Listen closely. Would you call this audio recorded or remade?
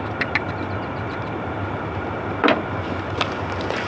remade